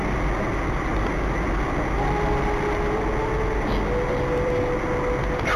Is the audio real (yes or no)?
yes